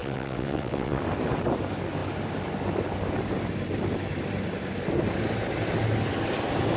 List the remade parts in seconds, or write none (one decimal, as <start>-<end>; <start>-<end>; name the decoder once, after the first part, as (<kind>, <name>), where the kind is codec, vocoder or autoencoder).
0.0-1.0 (vocoder, WaveNeXt)